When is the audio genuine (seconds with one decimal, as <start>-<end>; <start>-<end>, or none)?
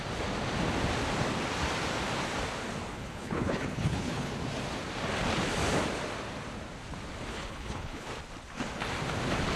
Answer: 0.0-2.9; 4.3-7.3; 8.1-9.6